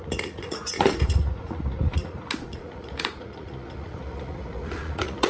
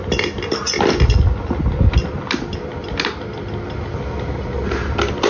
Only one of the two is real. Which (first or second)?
second